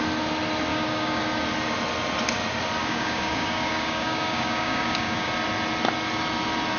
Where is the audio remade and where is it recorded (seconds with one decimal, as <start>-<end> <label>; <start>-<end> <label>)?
0.0-0.7 recorded; 0.7-1.2 remade; 1.2-2.8 recorded; 2.8-5.3 remade; 5.3-6.8 recorded